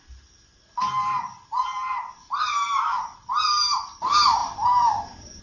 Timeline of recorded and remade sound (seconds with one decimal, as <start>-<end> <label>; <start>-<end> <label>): 0.0-5.4 remade

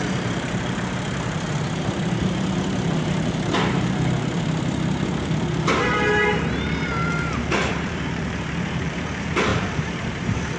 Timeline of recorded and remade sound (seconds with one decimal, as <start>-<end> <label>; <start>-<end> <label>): 0.0-10.6 remade

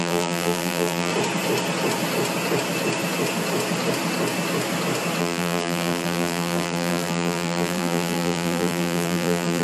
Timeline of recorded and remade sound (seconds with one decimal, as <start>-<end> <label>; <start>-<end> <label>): 0.0-1.1 remade; 1.1-5.2 recorded; 5.2-9.6 remade

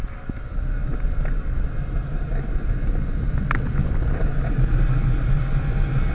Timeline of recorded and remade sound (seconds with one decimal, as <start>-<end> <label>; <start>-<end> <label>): 0.0-6.1 recorded

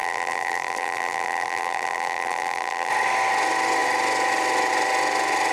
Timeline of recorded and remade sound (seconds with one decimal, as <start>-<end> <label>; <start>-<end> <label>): 0.0-2.9 remade; 2.9-5.5 recorded

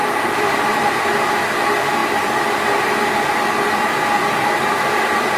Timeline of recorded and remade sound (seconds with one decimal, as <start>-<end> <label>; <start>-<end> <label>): 0.0-1.0 remade; 1.0-2.0 recorded; 2.0-5.4 remade

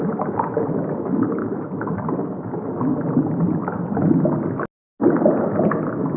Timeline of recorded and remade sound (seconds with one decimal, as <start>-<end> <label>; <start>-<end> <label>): 0.0-1.4 recorded; 1.4-2.4 remade; 2.4-6.2 recorded